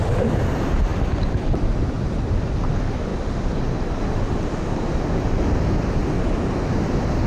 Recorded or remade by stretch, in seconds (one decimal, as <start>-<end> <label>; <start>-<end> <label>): 0.0-7.3 recorded

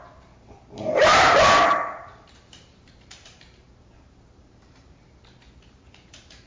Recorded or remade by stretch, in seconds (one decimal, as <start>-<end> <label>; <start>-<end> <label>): 0.0-6.5 remade

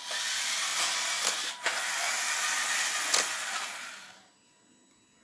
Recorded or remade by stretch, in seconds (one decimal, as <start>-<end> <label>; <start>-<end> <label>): 0.0-5.2 recorded

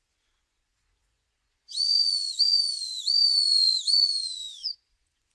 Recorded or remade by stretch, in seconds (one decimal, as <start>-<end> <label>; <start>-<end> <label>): 0.0-5.3 remade

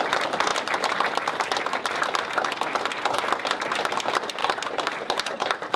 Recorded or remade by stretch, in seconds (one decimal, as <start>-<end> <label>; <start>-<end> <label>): 0.0-4.4 recorded; 4.4-5.8 remade

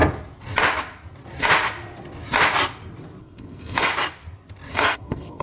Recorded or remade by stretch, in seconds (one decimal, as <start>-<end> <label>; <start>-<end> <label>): 0.0-3.2 recorded; 3.2-3.9 remade; 3.9-4.7 recorded; 4.7-5.4 remade